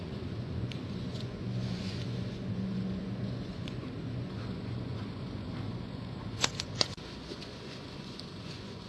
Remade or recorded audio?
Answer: remade